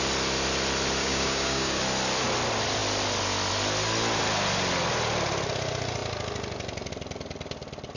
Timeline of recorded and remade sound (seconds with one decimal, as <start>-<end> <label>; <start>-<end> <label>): 0.0-1.0 recorded; 1.0-1.8 remade; 1.8-8.0 recorded